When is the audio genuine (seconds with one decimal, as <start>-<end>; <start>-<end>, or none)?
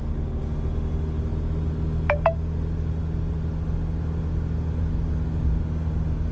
0.0-6.3